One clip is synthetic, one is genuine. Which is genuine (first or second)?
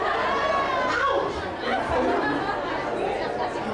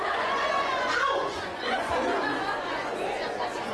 first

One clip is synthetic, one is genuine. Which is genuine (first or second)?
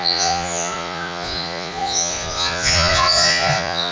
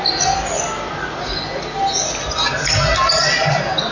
second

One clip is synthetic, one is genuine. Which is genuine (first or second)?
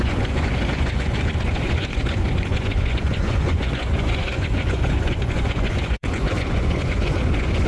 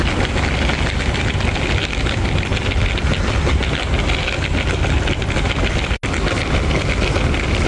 second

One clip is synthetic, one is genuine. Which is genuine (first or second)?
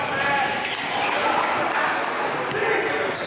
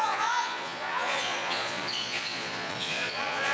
first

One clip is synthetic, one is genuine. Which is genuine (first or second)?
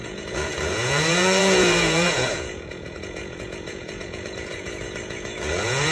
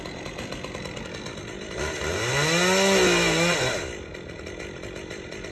second